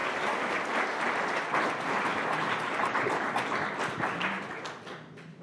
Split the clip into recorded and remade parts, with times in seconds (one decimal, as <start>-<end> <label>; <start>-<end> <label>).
0.0-0.6 remade; 0.6-5.4 recorded